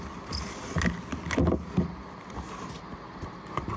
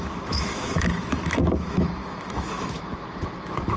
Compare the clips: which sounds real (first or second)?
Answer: first